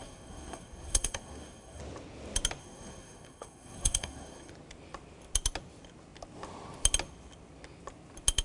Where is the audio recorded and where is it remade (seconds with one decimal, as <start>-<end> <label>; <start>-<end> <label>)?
0.0-1.8 remade; 1.8-2.6 recorded; 2.6-4.5 remade; 4.5-8.4 recorded